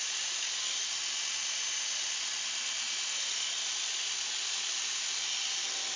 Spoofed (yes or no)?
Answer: no